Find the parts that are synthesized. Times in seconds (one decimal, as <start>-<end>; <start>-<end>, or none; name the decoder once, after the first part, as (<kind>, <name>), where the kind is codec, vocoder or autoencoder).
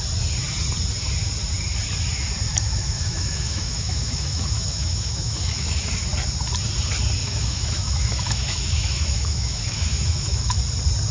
2.5-5.8 (autoencoder, DAC-VAE); 7.2-10.6